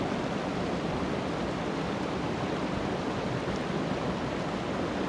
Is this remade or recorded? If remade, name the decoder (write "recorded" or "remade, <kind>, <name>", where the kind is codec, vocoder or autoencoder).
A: recorded